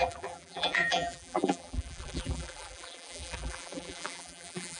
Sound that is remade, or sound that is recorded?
remade